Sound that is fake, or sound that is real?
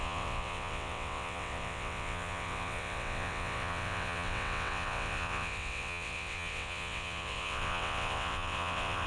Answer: fake